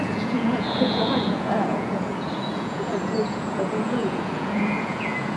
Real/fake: fake